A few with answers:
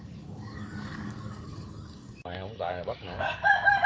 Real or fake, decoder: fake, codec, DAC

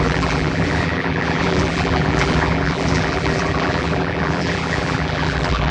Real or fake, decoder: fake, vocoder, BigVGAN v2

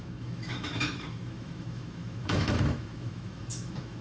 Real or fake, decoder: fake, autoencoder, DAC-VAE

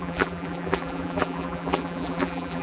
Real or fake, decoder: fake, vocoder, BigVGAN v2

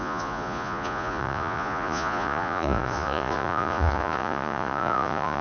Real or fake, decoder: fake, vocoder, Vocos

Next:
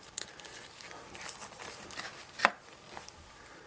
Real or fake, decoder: real